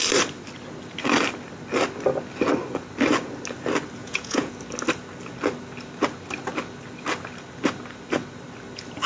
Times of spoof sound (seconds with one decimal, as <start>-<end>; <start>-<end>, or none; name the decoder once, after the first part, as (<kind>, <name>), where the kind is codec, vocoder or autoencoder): 4.0-4.5 (vocoder, Vocos)